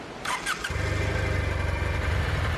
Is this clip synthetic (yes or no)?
no